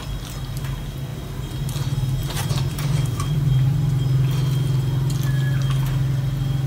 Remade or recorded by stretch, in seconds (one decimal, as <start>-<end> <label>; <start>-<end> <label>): 0.0-2.2 recorded; 2.2-3.7 remade; 3.7-6.7 recorded